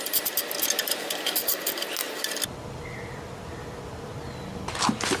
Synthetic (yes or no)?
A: no